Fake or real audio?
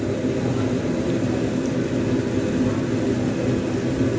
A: real